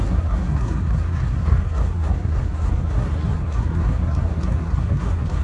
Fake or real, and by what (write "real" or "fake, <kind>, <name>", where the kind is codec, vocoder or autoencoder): fake, codec, SNAC